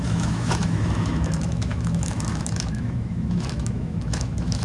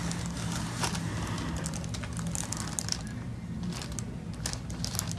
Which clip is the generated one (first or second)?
first